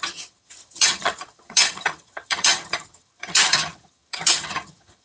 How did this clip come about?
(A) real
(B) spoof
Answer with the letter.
B